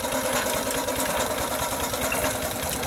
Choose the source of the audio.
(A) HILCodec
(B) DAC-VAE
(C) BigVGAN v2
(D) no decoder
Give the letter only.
D